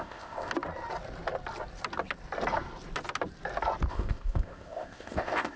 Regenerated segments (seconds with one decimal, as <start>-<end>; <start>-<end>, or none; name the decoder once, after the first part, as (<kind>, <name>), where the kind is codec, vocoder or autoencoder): 0.0-0.5 (codec, ZipCodec); 3.9-5.6

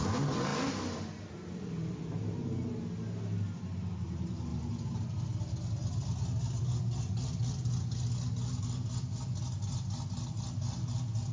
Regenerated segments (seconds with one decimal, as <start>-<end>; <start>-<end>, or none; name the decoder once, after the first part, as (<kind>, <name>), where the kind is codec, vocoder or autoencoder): none

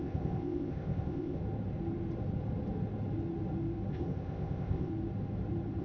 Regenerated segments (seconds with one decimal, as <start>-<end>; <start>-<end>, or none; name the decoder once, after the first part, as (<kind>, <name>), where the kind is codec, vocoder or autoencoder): 0.0-1.4 (codec, ZipCodec); 3.9-4.9

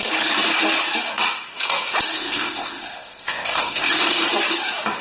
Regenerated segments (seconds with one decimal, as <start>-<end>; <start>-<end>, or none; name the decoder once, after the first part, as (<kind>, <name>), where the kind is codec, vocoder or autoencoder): 2.2-3.9 (codec, ZipCodec)

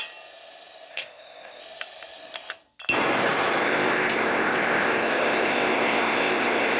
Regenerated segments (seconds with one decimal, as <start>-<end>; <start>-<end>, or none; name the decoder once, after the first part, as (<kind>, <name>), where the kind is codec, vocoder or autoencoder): 0.9-1.6 (codec, ZipCodec); 3.6-6.8

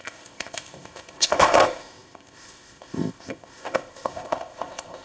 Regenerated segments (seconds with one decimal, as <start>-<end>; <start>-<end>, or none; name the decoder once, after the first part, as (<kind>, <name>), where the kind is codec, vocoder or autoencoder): 0.0-5.0 (codec, ZipCodec)

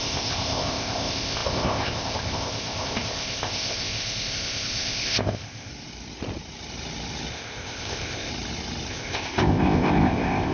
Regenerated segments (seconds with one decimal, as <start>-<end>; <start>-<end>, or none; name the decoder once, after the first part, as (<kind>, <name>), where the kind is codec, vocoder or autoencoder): 0.0-5.7 (codec, ZipCodec); 7.3-8.3; 8.9-10.5

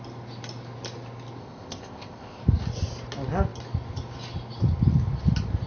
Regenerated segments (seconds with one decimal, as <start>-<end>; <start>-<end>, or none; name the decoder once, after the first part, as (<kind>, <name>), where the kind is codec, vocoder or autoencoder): 1.4-2.4 (codec, ZipCodec)